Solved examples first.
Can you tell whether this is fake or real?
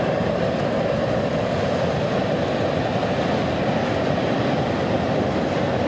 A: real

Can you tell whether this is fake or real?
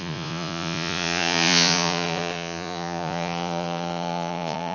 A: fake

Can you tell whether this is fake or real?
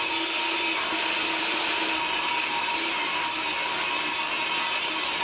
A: real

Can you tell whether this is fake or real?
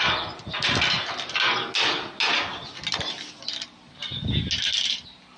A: real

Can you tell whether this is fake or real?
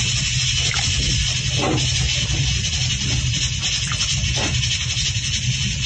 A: real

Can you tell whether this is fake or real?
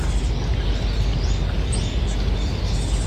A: real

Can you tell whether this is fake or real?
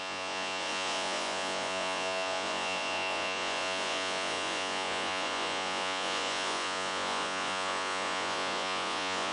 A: fake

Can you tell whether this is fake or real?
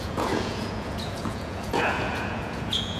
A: fake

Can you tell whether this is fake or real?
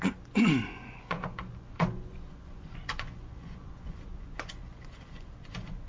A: fake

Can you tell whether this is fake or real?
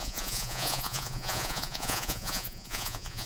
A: fake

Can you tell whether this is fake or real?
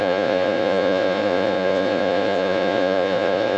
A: fake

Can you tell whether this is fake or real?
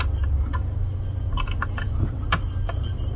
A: real